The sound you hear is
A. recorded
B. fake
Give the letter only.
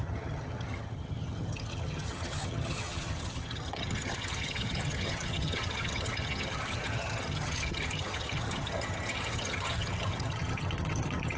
B